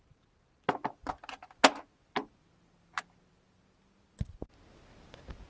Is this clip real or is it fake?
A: real